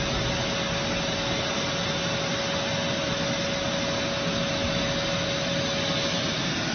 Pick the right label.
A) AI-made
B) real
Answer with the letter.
B